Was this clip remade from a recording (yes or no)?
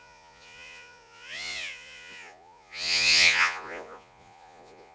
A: yes